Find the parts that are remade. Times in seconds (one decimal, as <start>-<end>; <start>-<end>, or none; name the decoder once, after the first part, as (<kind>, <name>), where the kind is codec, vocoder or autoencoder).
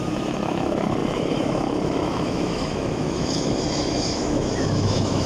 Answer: 0.0-5.3 (autoencoder, DAC-VAE)